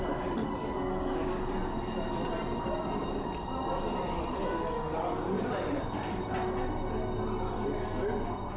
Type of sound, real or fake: real